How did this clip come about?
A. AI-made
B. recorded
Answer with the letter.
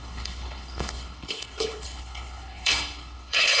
A